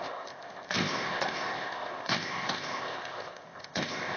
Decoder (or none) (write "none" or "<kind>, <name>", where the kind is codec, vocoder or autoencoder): codec, ZipCodec